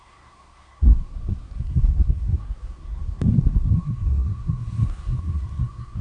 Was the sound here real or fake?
fake